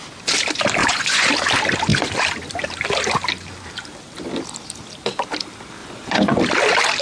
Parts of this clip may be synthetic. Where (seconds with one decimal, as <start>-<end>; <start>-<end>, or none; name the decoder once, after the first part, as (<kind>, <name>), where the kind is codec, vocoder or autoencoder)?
0.8-1.3 (vocoder, Vocos); 5.8-6.4